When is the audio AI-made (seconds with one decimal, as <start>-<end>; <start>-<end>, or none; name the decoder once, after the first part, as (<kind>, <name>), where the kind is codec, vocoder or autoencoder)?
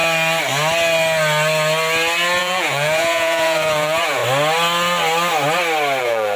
2.4-4.2 (vocoder, Vocos); 6.0-6.4